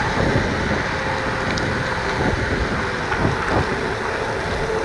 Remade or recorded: recorded